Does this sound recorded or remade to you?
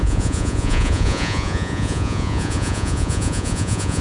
remade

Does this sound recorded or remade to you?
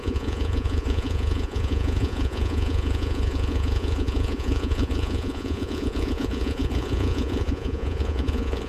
remade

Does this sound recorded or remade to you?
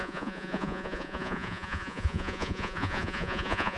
remade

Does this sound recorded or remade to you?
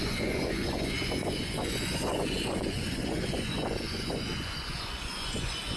remade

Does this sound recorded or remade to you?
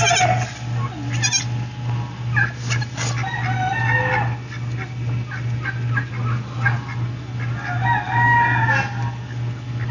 recorded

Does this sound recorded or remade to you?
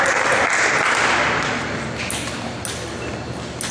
recorded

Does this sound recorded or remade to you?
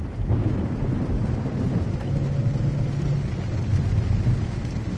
recorded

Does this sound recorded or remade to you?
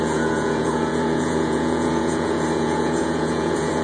remade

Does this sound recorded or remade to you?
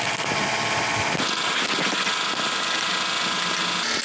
recorded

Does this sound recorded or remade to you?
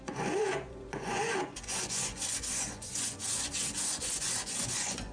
remade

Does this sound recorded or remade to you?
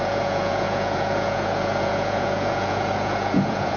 remade